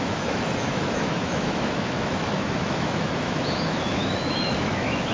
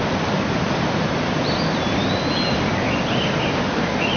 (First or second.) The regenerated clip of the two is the first